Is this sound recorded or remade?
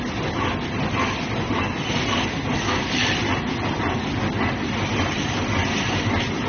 recorded